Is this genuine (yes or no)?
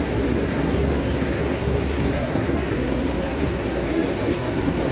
no